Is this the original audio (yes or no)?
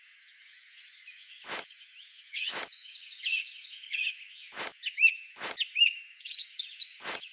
no